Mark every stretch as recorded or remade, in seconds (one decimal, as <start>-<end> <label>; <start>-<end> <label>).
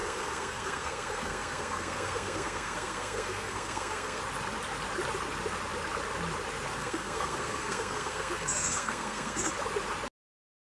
0.0-4.2 remade; 4.2-6.8 recorded; 6.8-9.5 remade; 9.5-10.7 recorded